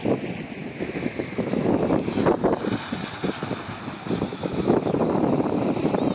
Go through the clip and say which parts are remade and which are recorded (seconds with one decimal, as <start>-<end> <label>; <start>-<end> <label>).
0.0-0.6 recorded; 0.6-1.7 remade; 1.7-4.3 recorded; 4.3-5.0 remade; 5.0-6.1 recorded